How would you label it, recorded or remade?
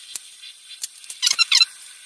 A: remade